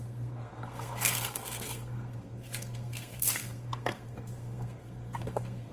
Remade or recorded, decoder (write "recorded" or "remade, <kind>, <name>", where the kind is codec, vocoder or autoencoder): remade, codec, SNAC